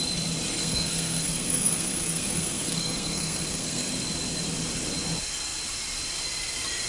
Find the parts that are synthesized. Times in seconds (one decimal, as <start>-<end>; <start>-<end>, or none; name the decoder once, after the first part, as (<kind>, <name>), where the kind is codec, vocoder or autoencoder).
0.6-3.9 (codec, SNAC)